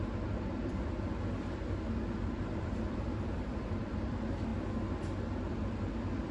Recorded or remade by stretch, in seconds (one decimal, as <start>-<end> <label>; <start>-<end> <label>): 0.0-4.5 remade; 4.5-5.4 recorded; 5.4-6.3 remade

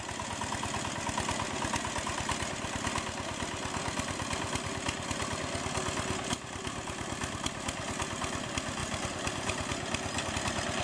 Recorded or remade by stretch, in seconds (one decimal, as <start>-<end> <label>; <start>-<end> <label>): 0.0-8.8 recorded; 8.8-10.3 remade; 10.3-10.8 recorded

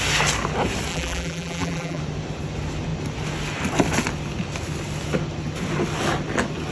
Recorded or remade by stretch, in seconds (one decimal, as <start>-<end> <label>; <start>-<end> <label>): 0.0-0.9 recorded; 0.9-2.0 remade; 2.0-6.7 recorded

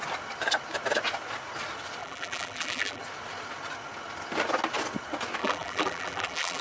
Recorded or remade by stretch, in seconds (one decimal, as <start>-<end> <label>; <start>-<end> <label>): 0.0-2.0 recorded; 2.0-3.0 remade; 3.0-5.4 recorded; 5.4-6.6 remade

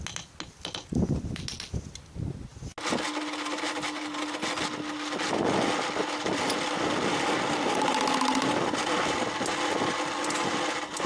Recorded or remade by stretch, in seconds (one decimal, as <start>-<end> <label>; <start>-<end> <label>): 0.0-11.1 recorded

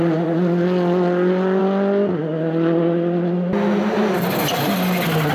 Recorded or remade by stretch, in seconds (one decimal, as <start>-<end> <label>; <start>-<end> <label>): 0.0-5.3 recorded